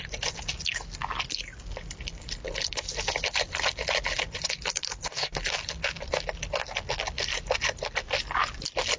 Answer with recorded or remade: recorded